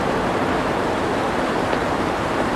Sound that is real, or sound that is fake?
fake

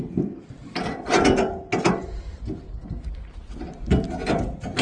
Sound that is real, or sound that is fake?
real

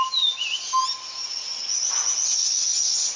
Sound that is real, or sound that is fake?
real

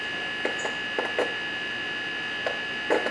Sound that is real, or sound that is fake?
real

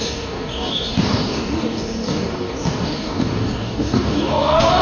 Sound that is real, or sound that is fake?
fake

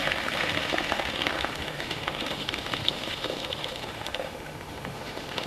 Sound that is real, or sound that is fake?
fake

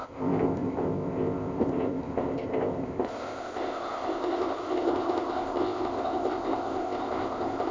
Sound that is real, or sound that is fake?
fake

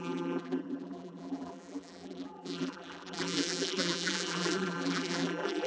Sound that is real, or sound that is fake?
fake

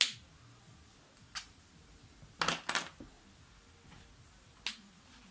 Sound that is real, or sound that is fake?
real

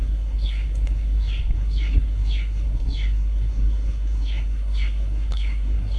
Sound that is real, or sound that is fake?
fake